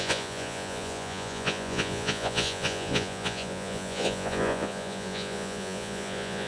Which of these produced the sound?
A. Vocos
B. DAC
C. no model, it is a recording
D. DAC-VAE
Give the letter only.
A